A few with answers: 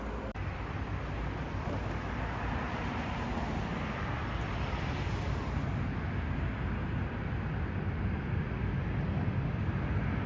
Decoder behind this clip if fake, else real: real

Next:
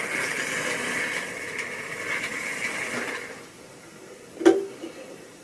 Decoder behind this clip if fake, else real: real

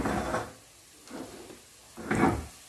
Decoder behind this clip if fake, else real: real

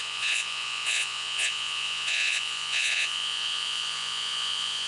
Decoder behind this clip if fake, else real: fake, vocoder, Vocos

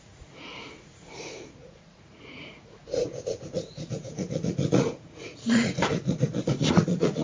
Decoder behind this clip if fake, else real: fake, vocoder, Vocos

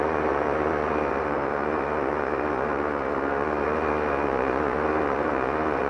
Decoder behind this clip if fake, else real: fake, vocoder, Vocos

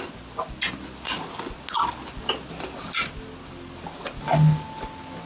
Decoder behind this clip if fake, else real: real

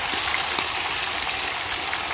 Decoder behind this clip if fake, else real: real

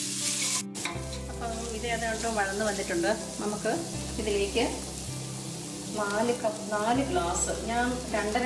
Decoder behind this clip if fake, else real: real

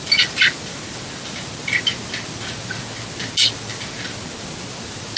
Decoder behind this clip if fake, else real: real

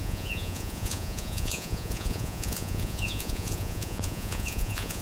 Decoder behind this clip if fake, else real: fake, vocoder, Vocos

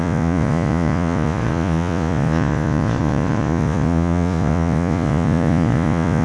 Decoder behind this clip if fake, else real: fake, vocoder, Vocos